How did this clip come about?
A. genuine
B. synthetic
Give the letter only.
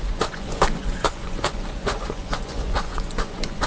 B